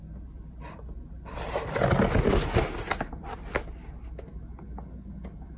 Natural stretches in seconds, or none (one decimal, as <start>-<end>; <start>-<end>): 0.0-5.6